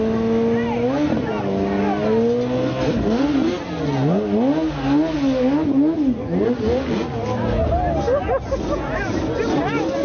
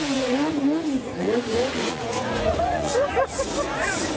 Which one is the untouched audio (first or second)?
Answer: first